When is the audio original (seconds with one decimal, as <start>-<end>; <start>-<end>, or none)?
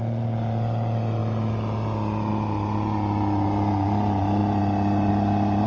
0.0-5.7